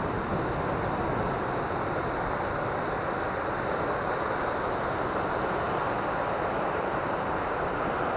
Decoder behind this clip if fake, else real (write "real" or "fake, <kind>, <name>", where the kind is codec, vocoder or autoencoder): real